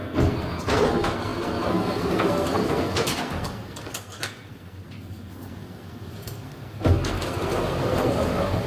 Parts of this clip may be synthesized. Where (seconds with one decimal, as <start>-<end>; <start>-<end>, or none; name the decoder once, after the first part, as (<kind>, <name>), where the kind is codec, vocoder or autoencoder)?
0.0-8.7 (codec, SNAC)